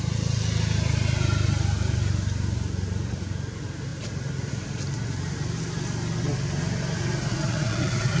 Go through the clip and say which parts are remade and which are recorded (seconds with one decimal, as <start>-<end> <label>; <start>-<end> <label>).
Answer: 0.0-7.3 recorded; 7.3-8.2 remade